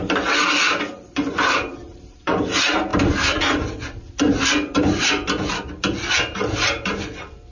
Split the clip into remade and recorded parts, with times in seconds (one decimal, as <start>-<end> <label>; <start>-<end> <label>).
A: 0.0-1.8 recorded; 1.8-2.4 remade; 2.4-7.5 recorded